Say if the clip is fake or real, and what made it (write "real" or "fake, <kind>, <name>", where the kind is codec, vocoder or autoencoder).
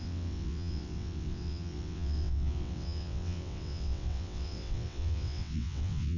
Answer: fake, vocoder, WaveNeXt